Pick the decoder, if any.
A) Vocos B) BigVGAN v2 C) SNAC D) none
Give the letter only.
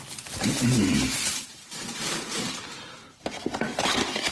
B